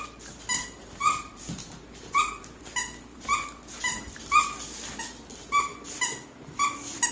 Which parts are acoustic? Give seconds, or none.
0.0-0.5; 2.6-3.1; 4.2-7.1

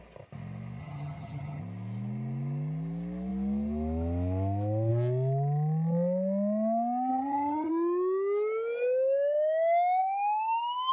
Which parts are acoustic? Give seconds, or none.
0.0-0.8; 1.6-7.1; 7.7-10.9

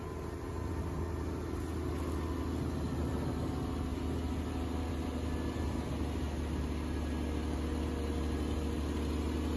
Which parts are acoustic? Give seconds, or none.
0.0-9.6

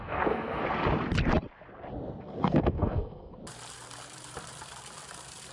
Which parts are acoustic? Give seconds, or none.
0.6-2.2; 3.4-5.5